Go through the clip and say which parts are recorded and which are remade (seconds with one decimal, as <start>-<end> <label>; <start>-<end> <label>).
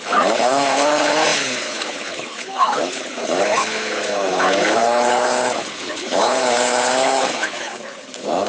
0.0-8.5 remade